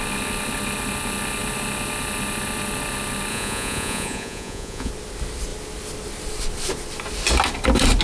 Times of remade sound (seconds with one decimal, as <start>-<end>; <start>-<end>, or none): 3.3-4.9